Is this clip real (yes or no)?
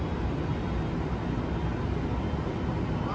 yes